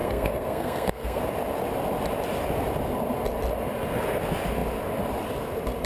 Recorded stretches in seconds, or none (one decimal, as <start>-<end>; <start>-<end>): 1.2-5.9

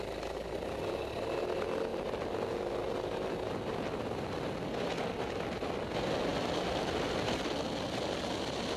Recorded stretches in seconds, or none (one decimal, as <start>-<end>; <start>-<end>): 0.0-1.9; 3.8-8.8

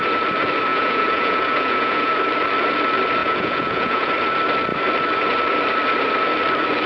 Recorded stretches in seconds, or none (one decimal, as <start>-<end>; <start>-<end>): 0.0-0.7; 2.1-3.2; 4.1-6.9